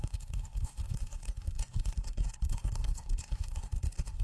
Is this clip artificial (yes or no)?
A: yes